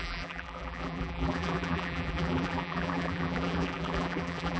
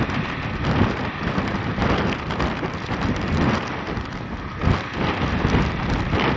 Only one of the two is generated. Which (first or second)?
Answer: first